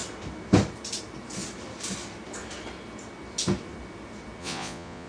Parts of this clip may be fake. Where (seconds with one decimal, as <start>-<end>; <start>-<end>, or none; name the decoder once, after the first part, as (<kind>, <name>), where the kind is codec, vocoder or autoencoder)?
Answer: 4.4-5.1 (vocoder, Vocos)